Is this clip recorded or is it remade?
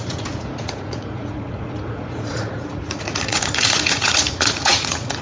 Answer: remade